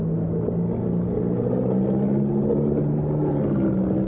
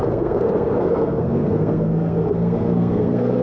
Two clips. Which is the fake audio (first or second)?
second